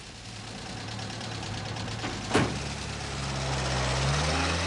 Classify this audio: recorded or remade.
recorded